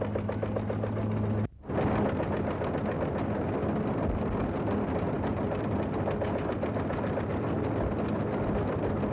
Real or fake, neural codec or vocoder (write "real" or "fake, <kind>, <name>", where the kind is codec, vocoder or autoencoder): real